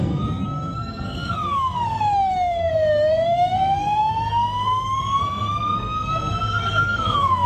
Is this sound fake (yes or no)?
yes